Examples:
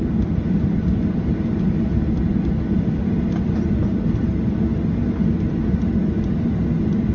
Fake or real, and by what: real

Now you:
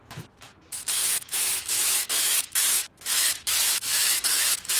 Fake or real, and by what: fake, autoencoder, DAC-VAE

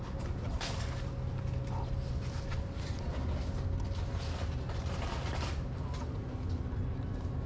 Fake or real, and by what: real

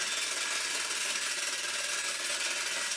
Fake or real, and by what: real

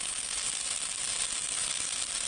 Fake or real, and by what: real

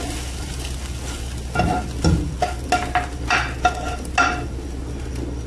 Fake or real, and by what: real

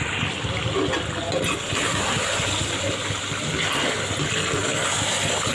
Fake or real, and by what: real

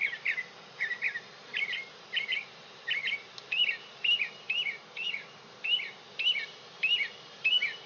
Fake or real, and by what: fake, vocoder, BigVGAN v2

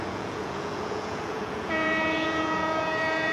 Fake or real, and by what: fake, vocoder, Vocos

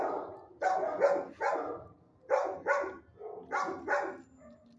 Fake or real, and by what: real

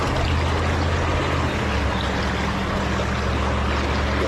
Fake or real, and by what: real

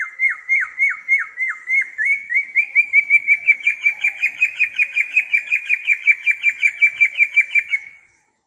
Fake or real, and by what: fake, codec, DAC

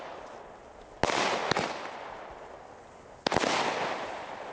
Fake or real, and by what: real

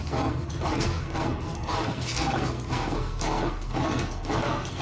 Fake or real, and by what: fake, codec, SNAC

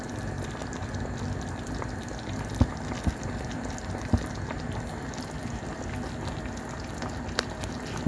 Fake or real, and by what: real